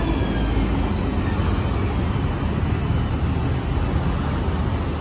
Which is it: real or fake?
real